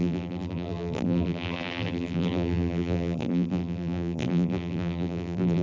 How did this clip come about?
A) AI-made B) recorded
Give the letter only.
A